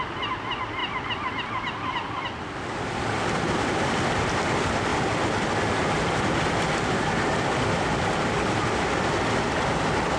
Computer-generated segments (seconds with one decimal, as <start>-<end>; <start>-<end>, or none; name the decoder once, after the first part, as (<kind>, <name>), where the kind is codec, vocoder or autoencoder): none